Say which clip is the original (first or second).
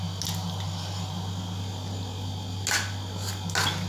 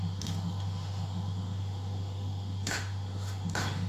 first